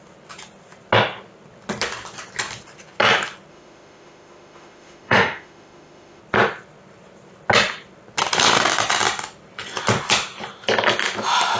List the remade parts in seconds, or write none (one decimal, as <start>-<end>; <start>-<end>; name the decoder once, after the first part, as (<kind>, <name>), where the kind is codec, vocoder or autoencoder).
3.5-6.2 (autoencoder, DAC-VAE)